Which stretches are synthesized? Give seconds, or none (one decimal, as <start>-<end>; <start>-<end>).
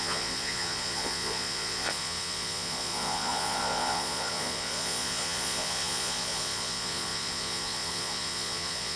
0.0-9.0